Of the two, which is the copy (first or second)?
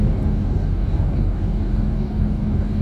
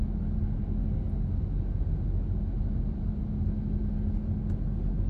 first